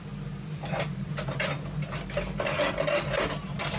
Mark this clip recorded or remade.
recorded